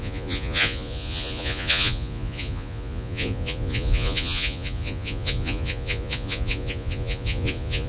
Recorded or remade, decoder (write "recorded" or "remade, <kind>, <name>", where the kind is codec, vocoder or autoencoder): remade, vocoder, Vocos